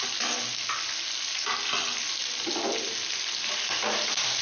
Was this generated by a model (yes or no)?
no